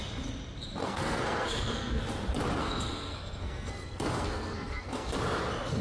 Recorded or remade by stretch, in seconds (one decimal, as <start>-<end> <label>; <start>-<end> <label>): 0.0-0.8 recorded; 0.8-2.0 remade; 2.0-2.6 recorded; 2.6-5.2 remade; 5.2-5.8 recorded